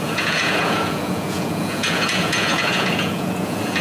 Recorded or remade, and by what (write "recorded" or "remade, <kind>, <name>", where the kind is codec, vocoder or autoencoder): remade, vocoder, Vocos